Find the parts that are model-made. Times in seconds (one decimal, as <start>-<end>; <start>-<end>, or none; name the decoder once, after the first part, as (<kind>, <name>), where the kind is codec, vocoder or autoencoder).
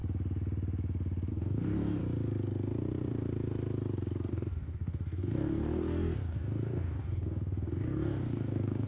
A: 1.3-2.0 (codec, DAC); 4.3-8.9